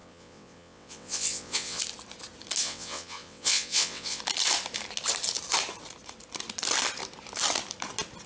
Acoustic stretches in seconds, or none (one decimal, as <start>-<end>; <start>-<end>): 1.8-2.6; 4.2-8.3